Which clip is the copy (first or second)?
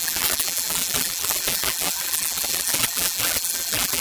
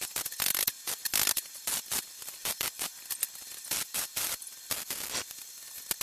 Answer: first